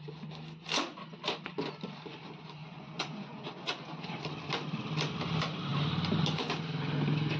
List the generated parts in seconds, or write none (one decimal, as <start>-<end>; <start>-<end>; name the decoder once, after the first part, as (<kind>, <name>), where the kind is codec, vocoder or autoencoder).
2.6-4.2 (vocoder, Vocos)